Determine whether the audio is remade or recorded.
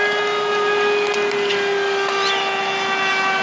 recorded